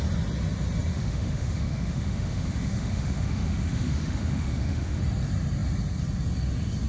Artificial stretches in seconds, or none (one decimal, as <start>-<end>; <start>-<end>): 0.9-5.0

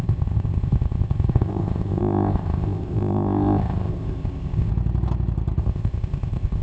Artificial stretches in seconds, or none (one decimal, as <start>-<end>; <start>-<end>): 0.0-4.7; 5.6-6.6

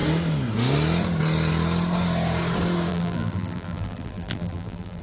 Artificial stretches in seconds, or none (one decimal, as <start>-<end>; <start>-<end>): 2.9-5.0

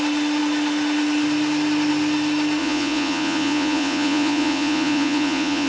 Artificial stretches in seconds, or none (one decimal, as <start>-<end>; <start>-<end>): 2.6-5.7